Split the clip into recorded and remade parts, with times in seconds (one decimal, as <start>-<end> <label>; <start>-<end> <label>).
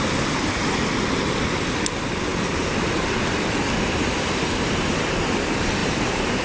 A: 0.0-5.8 recorded; 5.8-6.4 remade